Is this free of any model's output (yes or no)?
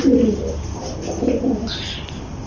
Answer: yes